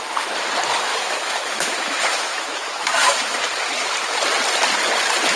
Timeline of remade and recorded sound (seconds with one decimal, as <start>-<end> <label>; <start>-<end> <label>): 0.0-0.9 recorded; 0.9-3.4 remade; 3.4-5.4 recorded